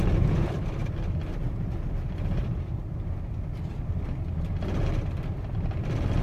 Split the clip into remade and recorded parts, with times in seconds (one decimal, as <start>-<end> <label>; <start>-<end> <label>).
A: 0.0-6.2 recorded